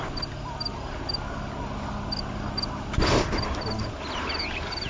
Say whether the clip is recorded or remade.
recorded